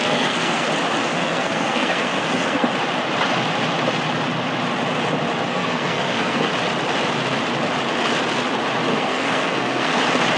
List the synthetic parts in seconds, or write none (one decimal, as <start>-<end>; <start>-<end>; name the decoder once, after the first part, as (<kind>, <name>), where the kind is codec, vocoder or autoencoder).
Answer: 0.0-0.7 (codec, SNAC); 1.1-2.7; 5.5-6.5; 8.9-10.0